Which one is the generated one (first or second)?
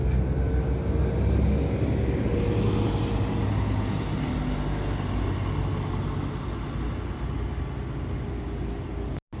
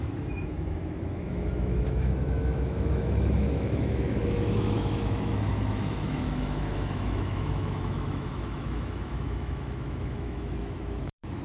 second